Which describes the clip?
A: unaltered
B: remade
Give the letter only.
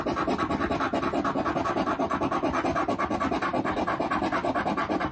A